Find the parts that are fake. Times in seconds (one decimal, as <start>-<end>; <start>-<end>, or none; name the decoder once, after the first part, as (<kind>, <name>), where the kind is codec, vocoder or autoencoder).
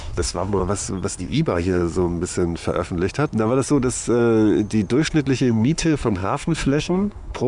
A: 0.0-0.6 (codec, SNAC); 1.2-1.8; 5.4-7.5